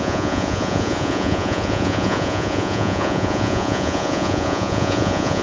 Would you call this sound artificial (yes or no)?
yes